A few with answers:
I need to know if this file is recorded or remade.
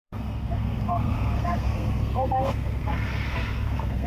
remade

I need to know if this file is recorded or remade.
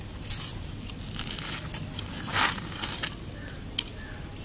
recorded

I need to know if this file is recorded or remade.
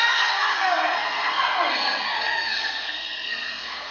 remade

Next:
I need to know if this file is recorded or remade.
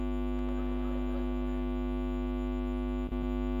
recorded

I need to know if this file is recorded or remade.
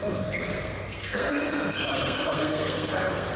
remade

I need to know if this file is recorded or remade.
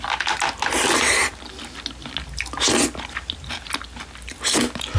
recorded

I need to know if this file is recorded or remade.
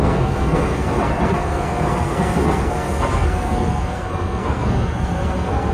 remade